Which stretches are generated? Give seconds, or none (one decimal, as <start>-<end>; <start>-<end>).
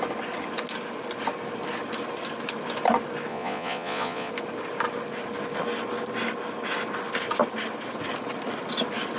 3.3-4.3